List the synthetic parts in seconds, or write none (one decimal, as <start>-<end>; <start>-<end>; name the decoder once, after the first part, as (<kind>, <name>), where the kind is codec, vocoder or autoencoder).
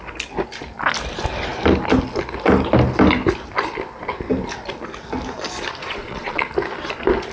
5.8-6.5 (vocoder, Vocos)